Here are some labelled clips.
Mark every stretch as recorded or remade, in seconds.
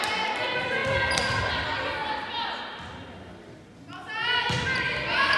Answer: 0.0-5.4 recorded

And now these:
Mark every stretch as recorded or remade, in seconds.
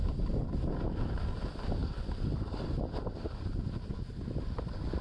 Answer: 0.0-5.0 recorded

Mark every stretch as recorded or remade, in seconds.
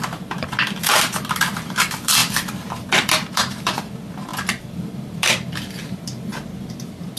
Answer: 0.0-6.3 remade; 6.3-7.2 recorded